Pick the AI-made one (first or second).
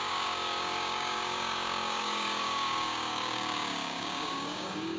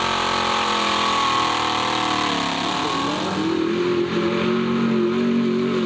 first